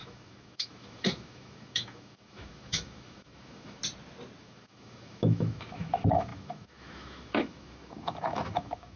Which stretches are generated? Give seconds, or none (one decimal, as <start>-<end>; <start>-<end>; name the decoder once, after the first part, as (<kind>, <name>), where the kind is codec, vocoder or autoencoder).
0.0-3.8 (autoencoder, DAC-VAE); 4.4-9.0